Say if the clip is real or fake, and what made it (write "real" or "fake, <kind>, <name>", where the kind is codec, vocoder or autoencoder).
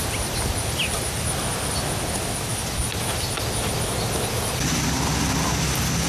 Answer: real